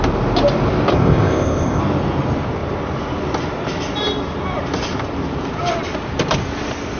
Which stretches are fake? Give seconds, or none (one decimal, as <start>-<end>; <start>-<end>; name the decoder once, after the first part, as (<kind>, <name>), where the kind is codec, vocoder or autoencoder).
0.9-1.8 (codec, ZipCodec)